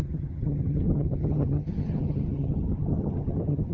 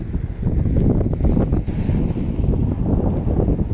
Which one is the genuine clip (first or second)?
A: second